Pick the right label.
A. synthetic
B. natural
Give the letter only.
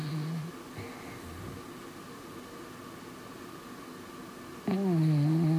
B